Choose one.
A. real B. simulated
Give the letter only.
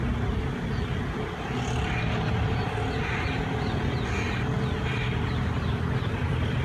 A